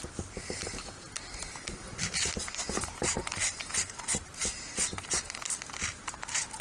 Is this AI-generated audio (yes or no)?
no